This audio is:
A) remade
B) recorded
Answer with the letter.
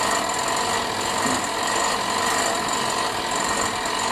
B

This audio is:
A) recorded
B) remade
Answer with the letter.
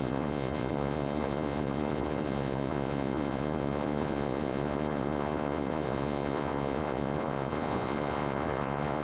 B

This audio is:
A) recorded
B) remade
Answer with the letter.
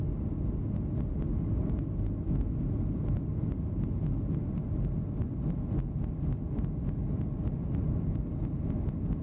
A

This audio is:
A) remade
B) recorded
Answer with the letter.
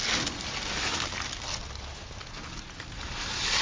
B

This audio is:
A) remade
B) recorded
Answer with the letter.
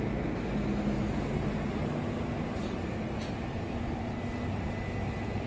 B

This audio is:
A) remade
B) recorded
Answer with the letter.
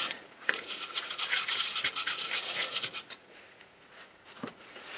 A